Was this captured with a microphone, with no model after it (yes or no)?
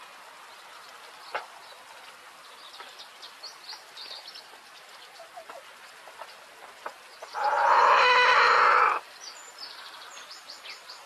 yes